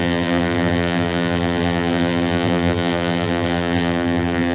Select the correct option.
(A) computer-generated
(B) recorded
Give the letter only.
A